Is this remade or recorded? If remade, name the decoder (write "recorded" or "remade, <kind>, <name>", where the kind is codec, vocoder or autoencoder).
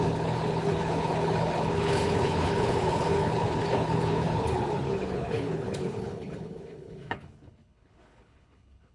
remade, codec, HILCodec